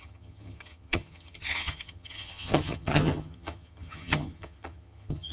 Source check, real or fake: fake